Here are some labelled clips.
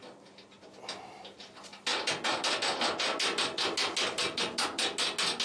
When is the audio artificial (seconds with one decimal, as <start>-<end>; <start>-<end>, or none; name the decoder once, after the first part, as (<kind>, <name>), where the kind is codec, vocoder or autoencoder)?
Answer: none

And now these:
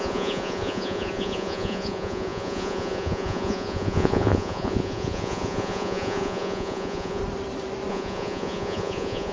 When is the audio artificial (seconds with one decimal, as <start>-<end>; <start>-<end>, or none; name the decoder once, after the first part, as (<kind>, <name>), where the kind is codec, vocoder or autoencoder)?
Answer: 0.0-7.2 (vocoder, Vocos); 7.9-9.3

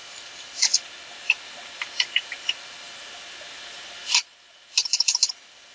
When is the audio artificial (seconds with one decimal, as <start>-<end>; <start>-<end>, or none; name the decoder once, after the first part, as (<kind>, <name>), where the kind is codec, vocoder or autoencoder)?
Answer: none

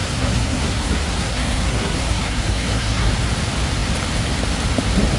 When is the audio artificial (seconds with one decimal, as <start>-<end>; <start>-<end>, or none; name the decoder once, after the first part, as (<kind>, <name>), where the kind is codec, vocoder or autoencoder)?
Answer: 0.0-3.1 (codec, SNAC)

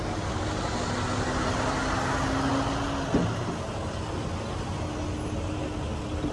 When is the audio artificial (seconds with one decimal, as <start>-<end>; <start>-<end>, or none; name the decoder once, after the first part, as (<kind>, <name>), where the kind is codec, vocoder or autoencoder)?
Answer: none

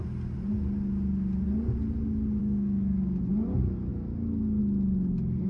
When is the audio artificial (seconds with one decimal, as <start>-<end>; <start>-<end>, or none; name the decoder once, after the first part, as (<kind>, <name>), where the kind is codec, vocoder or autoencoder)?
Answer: 2.4-3.2 (codec, SNAC)